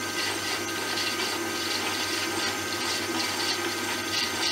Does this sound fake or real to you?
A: fake